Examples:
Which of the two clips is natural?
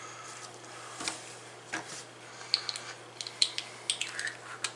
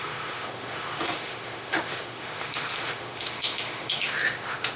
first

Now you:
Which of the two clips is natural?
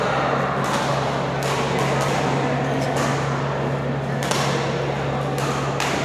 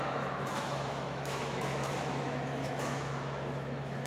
first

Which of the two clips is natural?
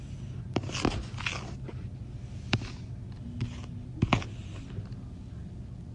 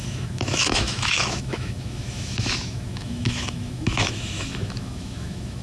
first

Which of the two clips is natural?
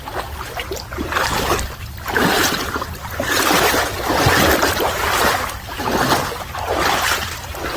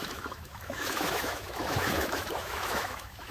first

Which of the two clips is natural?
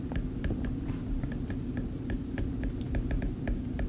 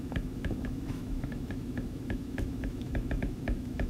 first